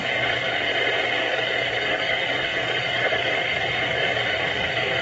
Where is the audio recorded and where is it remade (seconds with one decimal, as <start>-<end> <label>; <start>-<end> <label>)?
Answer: 0.0-0.7 remade; 0.7-1.2 recorded; 1.2-5.0 remade